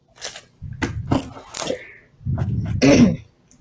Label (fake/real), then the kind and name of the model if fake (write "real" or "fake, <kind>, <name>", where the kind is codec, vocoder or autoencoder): real